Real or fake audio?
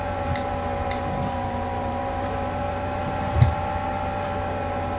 fake